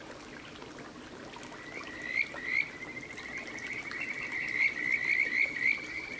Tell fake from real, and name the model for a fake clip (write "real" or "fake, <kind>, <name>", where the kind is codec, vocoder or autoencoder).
real